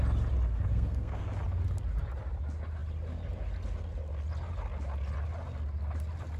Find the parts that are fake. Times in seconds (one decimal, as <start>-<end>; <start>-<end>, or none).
0.7-1.2